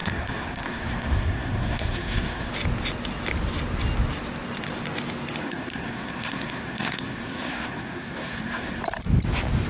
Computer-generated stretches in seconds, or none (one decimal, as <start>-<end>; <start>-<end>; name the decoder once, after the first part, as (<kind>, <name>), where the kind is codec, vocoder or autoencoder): 0.0-2.5 (codec, SNAC); 5.4-8.8